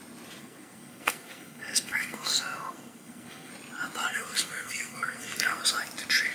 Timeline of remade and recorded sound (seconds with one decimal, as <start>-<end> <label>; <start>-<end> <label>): 0.0-0.4 recorded; 0.4-3.5 remade; 3.5-4.1 recorded; 4.1-5.6 remade; 5.6-6.3 recorded